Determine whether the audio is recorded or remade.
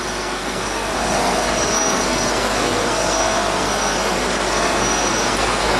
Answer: remade